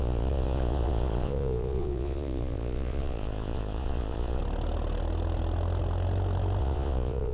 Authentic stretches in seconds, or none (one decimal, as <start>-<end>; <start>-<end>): 4.4-6.6